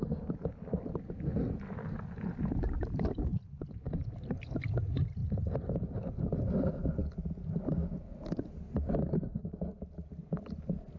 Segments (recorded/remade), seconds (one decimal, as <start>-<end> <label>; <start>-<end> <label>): 0.0-11.0 recorded